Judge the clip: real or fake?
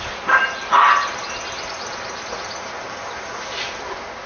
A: real